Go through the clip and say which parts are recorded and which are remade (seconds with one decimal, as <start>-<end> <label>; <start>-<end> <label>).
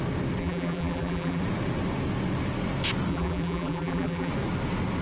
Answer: 0.0-0.4 recorded; 0.4-1.4 remade; 1.4-3.1 recorded; 3.1-4.3 remade; 4.3-5.0 recorded